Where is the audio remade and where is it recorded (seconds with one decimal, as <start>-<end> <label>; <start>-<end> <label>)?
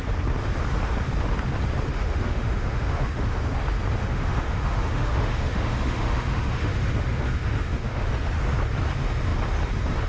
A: 0.0-1.9 recorded; 1.9-3.4 remade; 3.4-4.0 recorded; 4.0-8.1 remade; 8.1-10.1 recorded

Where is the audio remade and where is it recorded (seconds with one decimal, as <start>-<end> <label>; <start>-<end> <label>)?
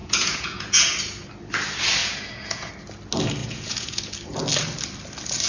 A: 0.0-0.9 remade; 0.9-2.0 recorded; 2.0-2.7 remade; 2.7-3.4 recorded; 3.4-4.0 remade; 4.0-5.5 recorded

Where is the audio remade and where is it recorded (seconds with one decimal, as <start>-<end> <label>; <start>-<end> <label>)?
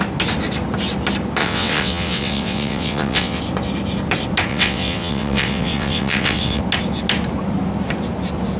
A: 0.0-1.4 recorded; 1.4-3.4 remade; 3.4-4.5 recorded; 4.5-6.6 remade; 6.6-8.6 recorded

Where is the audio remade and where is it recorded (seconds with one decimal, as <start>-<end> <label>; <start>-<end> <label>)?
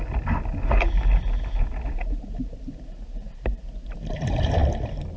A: 0.0-4.6 remade; 4.6-5.2 recorded